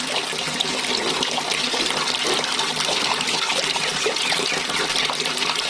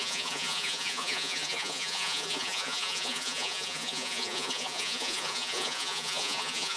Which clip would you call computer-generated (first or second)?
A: second